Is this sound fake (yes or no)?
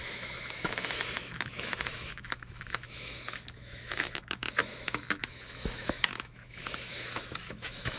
yes